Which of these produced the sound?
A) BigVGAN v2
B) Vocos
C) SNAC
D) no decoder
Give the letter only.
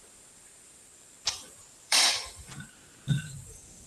A